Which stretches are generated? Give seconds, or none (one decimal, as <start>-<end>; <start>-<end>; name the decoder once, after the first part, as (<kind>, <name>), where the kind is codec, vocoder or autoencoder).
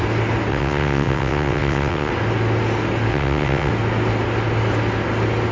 0.5-2.1 (vocoder, WaveNeXt); 3.1-3.7